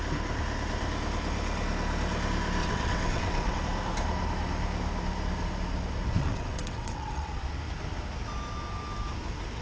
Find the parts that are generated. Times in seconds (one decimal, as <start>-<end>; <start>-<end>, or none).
2.6-3.6; 6.2-7.4